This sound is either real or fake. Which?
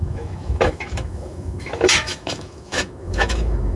fake